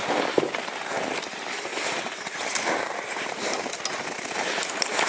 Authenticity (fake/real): real